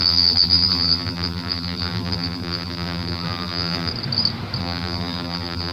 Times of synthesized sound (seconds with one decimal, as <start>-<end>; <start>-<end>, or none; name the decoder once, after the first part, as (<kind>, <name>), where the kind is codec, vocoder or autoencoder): 0.0-3.9 (vocoder, BigVGAN v2); 4.6-5.7